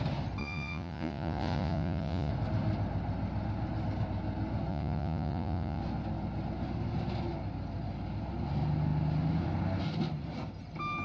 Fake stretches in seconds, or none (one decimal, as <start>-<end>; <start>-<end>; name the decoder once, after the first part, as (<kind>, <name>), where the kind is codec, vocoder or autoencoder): 0.4-2.3 (vocoder, Vocos); 4.7-5.8